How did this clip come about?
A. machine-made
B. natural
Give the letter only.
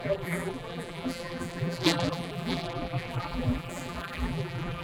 A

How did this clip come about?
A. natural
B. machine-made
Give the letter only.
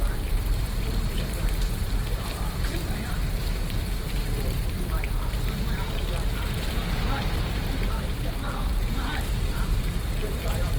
B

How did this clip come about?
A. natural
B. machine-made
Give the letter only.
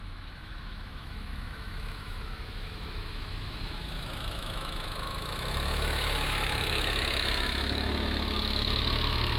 B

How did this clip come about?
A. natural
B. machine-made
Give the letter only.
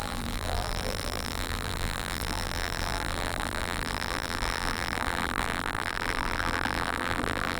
B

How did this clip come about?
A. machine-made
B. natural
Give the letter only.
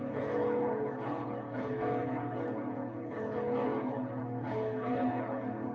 A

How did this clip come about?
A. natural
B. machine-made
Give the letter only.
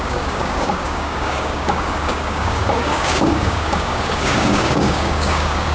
B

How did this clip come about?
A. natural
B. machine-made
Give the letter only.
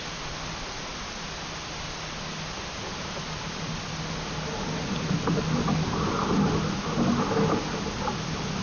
A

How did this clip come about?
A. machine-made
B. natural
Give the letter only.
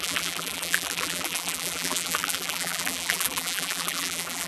A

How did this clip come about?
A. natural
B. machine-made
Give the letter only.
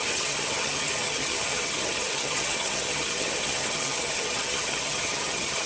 B